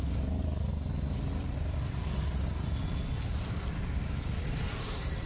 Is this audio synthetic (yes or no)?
no